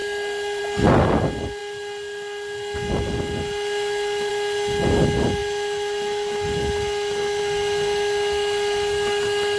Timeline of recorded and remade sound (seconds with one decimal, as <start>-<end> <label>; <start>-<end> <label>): 0.0-9.6 recorded